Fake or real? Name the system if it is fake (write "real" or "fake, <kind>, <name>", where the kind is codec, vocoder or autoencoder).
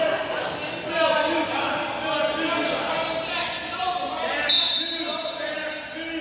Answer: real